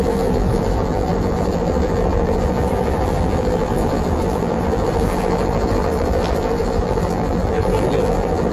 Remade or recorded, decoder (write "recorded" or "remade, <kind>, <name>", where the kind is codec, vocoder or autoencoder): remade, vocoder, BigVGAN v2